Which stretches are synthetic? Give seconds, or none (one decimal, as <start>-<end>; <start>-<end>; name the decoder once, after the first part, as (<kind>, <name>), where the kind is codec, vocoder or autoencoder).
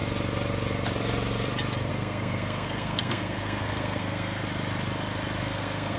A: 1.9-4.4 (codec, SNAC); 5.4-6.0